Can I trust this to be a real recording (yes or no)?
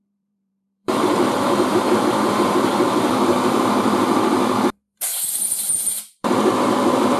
no